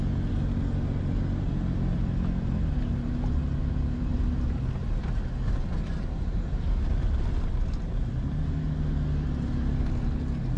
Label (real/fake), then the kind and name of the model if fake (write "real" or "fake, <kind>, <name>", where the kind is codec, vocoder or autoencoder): real